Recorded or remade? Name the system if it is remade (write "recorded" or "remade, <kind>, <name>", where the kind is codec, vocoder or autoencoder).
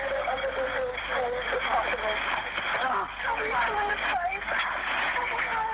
recorded